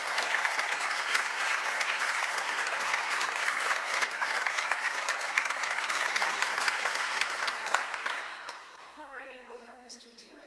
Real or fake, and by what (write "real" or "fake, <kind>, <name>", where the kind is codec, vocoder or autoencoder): fake, codec, SNAC